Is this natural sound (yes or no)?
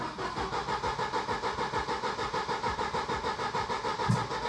yes